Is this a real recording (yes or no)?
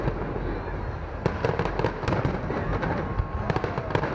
yes